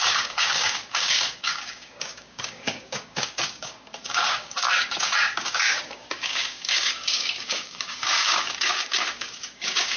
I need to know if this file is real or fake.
fake